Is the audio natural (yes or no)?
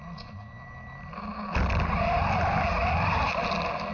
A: yes